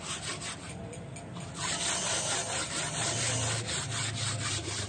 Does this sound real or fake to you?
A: real